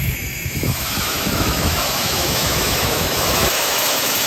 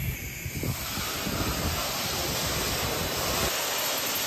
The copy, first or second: first